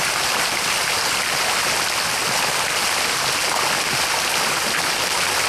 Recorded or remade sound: recorded